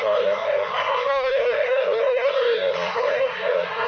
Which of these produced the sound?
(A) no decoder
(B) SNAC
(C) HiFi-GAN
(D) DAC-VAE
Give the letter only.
B